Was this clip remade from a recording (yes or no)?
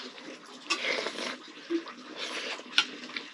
no